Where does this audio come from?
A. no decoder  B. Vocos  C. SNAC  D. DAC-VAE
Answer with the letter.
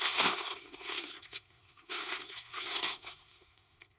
C